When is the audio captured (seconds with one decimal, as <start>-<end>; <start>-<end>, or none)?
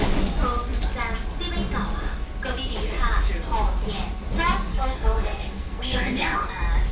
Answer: 0.0-4.7; 6.5-6.9